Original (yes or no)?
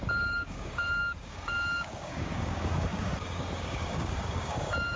no